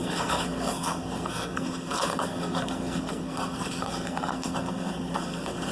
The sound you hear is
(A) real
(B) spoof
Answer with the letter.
B